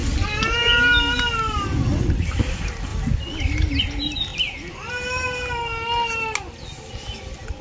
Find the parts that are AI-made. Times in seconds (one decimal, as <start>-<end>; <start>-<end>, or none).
none

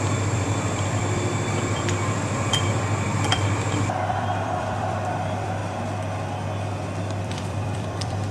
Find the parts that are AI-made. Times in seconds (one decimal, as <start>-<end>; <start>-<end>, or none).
0.0-5.6; 7.2-8.3

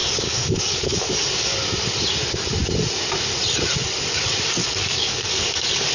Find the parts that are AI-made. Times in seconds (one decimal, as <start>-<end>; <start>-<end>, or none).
0.0-1.1; 4.6-5.9

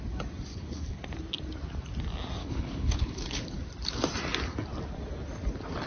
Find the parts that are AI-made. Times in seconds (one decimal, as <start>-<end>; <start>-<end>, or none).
0.5-1.0; 2.4-3.6